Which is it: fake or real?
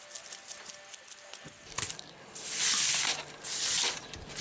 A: real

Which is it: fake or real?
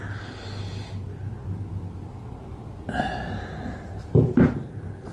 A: real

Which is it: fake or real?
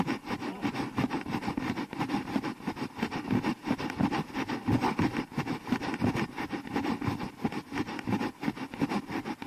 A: real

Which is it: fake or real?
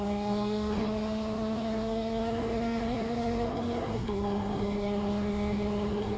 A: fake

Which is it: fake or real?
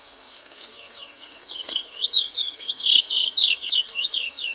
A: fake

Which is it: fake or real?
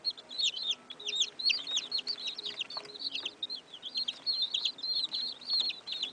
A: real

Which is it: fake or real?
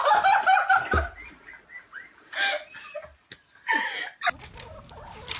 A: real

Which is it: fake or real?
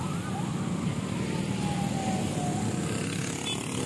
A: real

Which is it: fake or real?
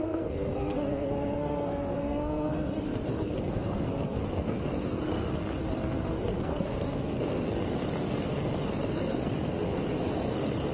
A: fake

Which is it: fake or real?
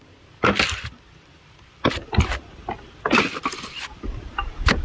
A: real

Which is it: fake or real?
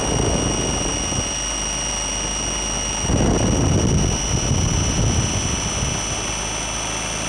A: real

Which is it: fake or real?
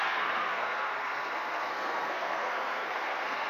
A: fake